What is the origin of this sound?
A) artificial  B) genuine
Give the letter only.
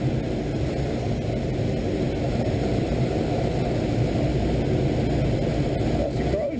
B